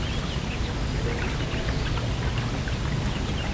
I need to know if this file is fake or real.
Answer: real